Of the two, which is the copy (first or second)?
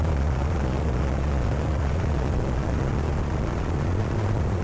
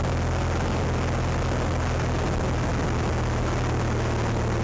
first